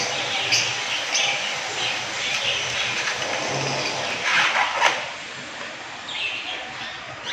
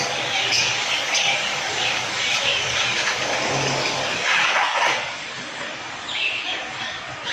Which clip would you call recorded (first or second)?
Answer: first